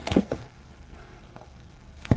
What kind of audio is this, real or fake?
fake